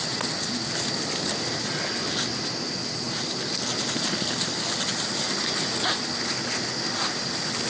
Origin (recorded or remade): recorded